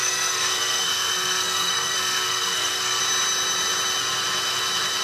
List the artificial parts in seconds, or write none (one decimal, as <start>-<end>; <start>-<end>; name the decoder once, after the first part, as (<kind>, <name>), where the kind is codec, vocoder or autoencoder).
0.0-3.0 (codec, SNAC)

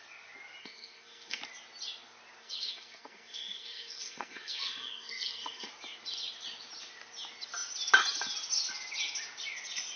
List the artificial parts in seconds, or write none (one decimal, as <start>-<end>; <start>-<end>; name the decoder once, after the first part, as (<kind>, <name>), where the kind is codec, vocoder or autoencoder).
0.6-1.4 (codec, SNAC); 2.4-5.7

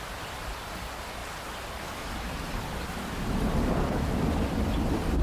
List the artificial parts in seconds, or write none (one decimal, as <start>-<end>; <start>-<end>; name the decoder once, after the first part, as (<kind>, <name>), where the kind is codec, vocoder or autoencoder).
none

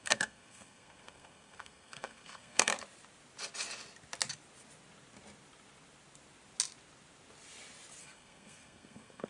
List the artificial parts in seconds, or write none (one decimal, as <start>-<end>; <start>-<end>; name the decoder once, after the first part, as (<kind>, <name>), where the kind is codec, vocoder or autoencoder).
0.0-2.7 (codec, SNAC); 8.0-9.3